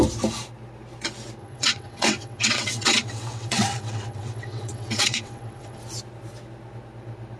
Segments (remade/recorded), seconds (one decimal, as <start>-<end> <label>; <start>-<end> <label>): 0.0-1.4 recorded; 1.4-5.8 remade; 5.8-7.4 recorded